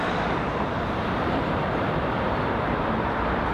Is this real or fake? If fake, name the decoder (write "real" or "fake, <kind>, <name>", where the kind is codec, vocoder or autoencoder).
fake, vocoder, BigVGAN v2